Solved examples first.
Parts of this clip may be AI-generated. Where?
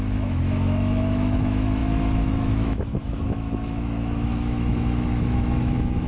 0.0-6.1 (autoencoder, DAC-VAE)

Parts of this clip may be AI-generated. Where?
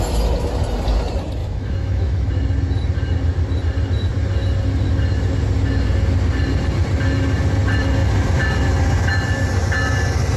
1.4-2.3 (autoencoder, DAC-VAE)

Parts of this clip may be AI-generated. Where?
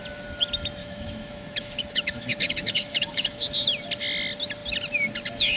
0.8-3.5 (autoencoder, DAC-VAE)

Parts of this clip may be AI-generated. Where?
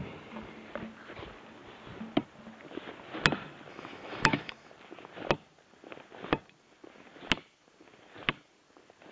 3.7-4.7 (autoencoder, DAC-VAE)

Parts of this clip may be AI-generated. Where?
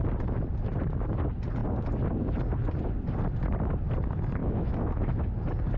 4.4-5.3 (autoencoder, DAC-VAE)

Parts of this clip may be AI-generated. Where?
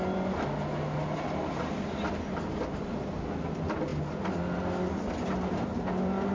none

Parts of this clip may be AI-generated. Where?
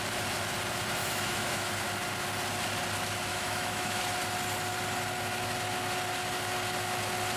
1.0-1.7 (autoencoder, DAC-VAE); 3.3-4.0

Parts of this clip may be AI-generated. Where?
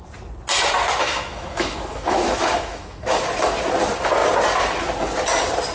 1.0-3.2 (autoencoder, DAC-VAE)